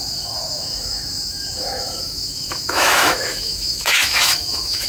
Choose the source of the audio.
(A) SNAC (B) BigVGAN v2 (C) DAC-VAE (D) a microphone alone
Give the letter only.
C